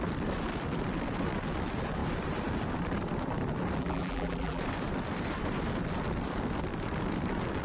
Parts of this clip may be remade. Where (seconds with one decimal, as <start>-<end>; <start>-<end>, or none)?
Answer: 3.8-4.6